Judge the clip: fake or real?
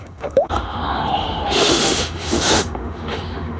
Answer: fake